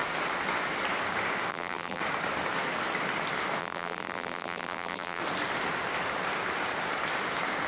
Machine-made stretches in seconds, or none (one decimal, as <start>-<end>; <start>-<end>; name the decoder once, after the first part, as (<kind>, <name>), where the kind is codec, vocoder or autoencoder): 1.5-2.0 (vocoder, BigVGAN v2); 3.6-5.2